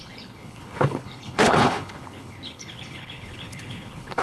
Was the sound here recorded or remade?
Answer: remade